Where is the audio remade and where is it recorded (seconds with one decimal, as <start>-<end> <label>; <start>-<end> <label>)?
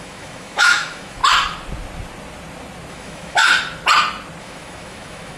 0.0-1.2 remade; 1.2-2.9 recorded; 2.9-3.4 remade; 3.4-4.4 recorded; 4.4-5.4 remade